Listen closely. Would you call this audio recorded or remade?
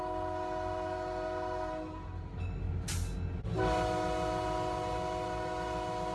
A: recorded